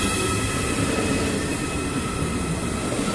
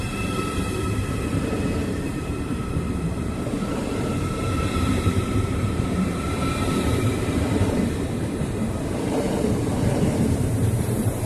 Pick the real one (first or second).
first